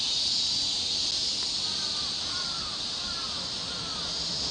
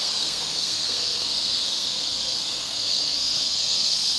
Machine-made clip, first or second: second